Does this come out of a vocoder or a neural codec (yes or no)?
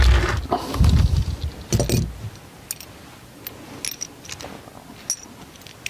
no